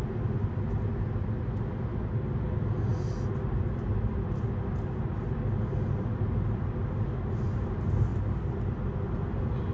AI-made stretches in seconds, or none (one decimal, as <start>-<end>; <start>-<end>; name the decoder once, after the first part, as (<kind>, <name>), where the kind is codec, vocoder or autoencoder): none